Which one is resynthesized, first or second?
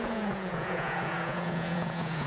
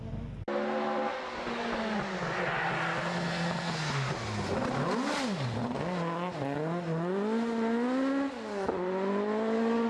first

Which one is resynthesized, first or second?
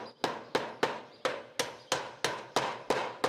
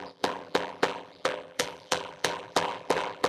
second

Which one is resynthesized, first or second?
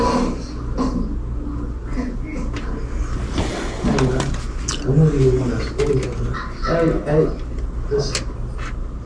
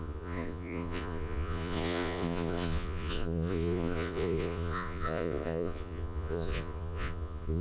second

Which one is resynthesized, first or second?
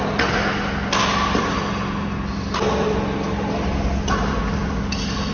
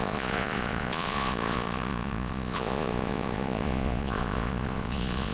second